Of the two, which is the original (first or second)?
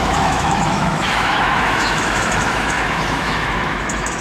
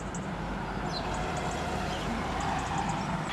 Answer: second